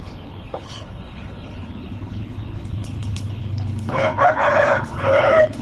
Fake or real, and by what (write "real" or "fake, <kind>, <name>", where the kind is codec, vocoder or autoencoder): fake, codec, HILCodec